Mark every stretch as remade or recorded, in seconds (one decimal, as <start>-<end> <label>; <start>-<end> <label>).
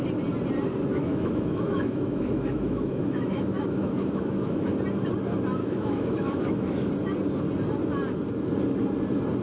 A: 0.0-0.9 recorded; 0.9-4.7 remade; 4.7-5.6 recorded; 5.6-6.9 remade; 6.9-9.4 recorded